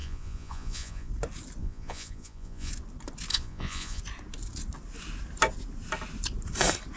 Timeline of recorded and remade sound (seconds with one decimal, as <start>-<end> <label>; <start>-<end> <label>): 0.0-1.1 remade; 1.1-1.6 recorded; 1.6-2.7 remade; 2.7-3.3 recorded; 3.3-4.0 remade; 4.0-7.0 recorded

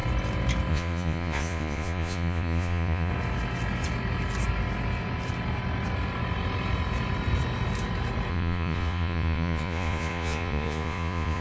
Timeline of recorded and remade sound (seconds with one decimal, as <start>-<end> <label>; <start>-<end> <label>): 0.0-0.7 recorded; 0.7-3.1 remade; 3.1-8.3 recorded; 8.3-11.4 remade

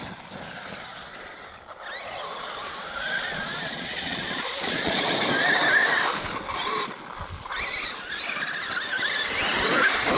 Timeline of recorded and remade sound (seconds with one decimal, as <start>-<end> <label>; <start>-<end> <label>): 0.0-3.3 recorded; 3.3-5.2 remade; 5.2-10.2 recorded